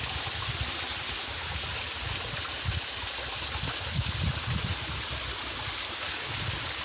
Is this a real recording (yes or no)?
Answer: yes